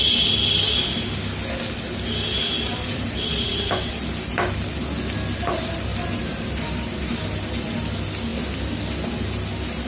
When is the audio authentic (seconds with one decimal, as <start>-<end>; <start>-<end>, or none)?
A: 0.0-2.7; 3.9-9.9